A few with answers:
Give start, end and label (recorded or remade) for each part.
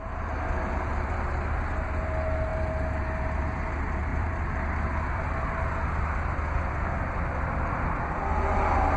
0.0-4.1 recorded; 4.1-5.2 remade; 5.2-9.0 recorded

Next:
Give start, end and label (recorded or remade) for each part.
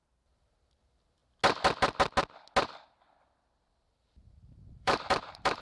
0.0-1.2 remade; 1.2-3.8 recorded; 3.8-5.6 remade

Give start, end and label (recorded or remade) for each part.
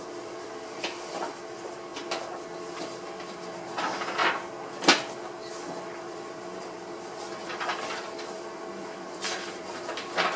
0.0-1.9 remade; 1.9-2.8 recorded; 2.8-4.2 remade; 4.2-5.9 recorded; 5.9-10.4 remade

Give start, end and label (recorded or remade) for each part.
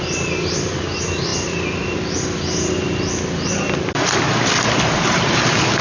0.0-5.8 recorded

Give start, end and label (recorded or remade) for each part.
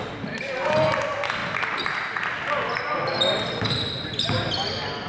0.0-5.1 recorded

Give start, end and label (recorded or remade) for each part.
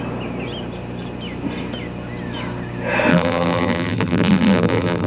0.0-3.1 recorded; 3.1-5.1 remade